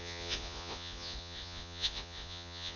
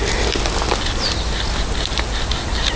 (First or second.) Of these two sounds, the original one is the second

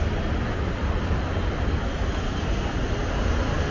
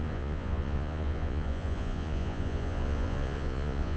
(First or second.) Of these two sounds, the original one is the first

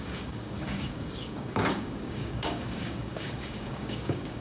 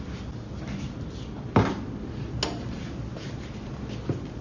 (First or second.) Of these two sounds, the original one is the second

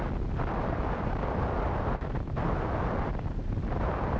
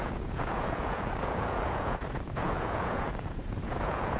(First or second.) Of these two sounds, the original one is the first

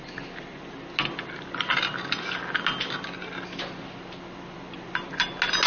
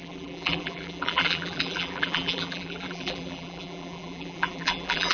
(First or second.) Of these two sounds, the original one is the first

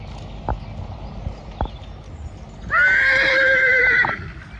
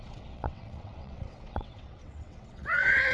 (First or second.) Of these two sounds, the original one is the first